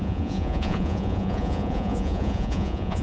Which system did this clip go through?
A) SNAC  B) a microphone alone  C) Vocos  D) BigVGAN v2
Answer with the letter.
C